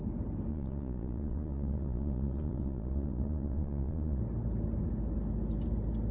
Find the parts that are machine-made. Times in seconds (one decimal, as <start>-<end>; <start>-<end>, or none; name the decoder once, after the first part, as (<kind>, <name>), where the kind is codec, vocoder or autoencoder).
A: 0.5-4.2 (vocoder, Vocos)